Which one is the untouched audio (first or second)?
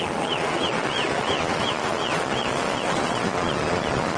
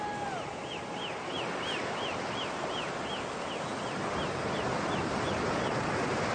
second